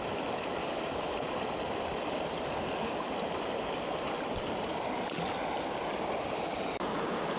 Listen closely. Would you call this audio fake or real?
real